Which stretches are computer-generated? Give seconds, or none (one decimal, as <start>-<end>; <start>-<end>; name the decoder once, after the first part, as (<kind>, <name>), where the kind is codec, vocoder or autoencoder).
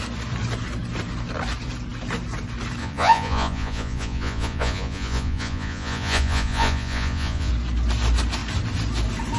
2.8-7.5 (vocoder, Vocos)